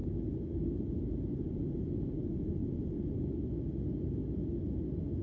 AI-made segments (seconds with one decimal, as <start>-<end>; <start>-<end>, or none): none

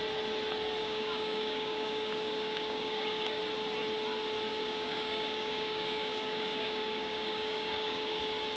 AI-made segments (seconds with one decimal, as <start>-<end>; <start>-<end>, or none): 0.8-3.4; 4.5-8.2